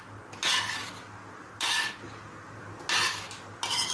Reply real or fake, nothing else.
real